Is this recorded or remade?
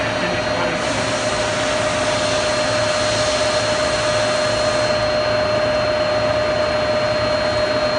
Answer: recorded